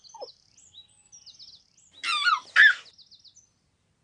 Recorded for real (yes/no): yes